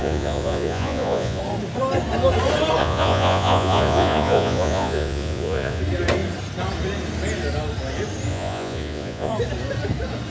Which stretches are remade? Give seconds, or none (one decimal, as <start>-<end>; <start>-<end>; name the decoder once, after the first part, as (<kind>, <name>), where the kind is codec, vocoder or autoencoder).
0.0-1.4 (vocoder, Vocos); 2.8-5.8; 8.3-9.3